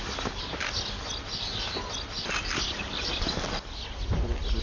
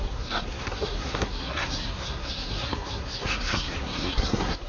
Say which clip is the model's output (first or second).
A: second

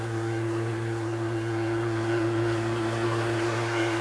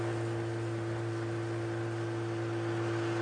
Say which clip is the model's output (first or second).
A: first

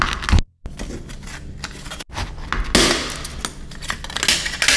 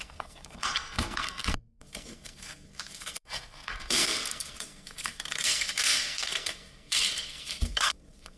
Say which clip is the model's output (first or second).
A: second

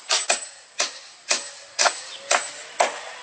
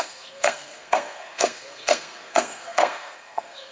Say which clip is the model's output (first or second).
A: second